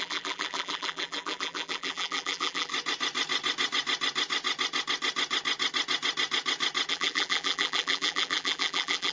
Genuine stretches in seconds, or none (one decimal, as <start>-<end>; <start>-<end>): 2.7-6.9